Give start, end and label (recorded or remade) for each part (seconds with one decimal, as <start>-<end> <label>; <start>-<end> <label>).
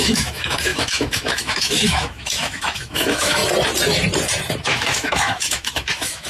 0.0-3.4 remade; 3.4-4.6 recorded; 4.6-6.3 remade